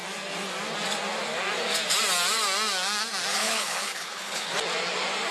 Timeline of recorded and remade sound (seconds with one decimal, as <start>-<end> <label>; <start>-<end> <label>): 0.0-3.3 recorded; 3.3-4.5 remade; 4.5-5.3 recorded